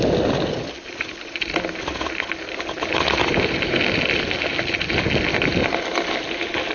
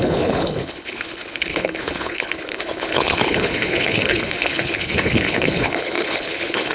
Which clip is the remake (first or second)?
second